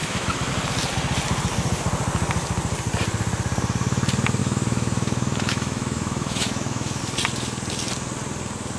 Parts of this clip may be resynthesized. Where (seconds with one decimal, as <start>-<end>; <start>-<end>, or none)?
0.0-0.5; 4.4-7.0